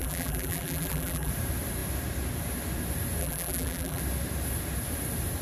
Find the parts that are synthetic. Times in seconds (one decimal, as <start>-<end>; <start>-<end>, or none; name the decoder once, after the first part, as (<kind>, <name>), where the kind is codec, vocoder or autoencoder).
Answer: 0.0-1.3 (vocoder, BigVGAN v2); 3.2-4.0